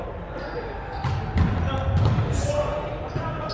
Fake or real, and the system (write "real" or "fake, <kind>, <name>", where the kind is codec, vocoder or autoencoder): real